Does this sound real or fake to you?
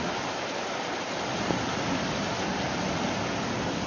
real